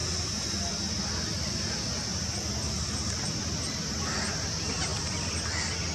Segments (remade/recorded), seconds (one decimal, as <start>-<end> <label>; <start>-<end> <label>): 0.0-5.9 recorded